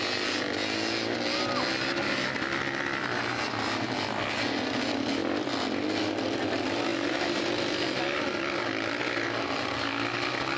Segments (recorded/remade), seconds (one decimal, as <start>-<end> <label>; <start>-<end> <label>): 0.0-10.6 recorded